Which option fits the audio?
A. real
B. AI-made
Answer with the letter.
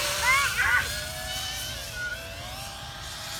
A